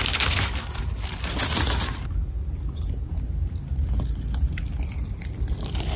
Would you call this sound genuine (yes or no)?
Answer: yes